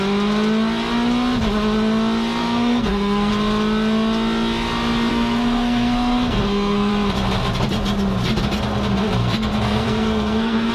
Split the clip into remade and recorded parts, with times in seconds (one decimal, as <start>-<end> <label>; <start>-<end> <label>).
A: 0.0-2.4 recorded; 2.4-3.3 remade; 3.3-5.1 recorded; 5.1-6.9 remade; 6.9-9.2 recorded; 9.2-10.7 remade